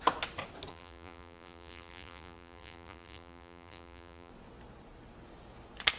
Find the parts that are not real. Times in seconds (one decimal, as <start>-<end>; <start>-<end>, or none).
0.7-4.3